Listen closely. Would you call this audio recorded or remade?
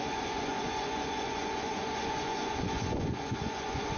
remade